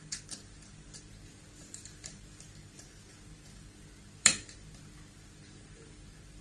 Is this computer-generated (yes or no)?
yes